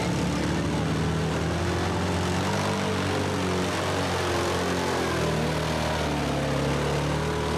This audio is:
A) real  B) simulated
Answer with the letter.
A